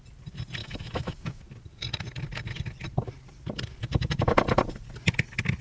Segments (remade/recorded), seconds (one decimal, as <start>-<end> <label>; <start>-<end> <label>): 0.0-0.6 recorded; 0.6-1.4 remade; 1.4-5.6 recorded

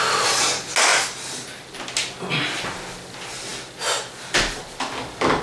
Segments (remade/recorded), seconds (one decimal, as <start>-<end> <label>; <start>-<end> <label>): 0.0-5.4 recorded